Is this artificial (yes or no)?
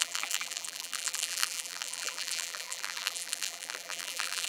yes